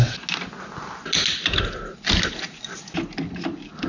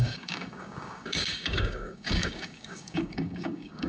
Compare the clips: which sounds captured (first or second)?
first